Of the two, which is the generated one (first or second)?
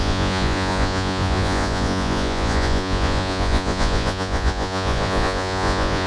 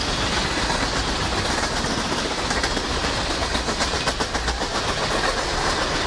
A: first